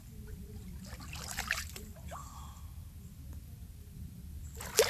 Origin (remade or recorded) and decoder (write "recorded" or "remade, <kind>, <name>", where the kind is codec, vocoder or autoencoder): recorded